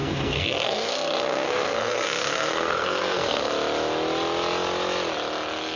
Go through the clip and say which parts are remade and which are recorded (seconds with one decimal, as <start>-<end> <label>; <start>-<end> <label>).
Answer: 0.0-3.5 remade; 3.5-5.8 recorded